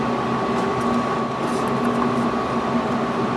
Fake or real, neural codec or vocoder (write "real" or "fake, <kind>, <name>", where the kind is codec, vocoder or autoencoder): real